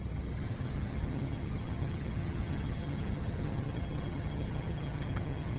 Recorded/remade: remade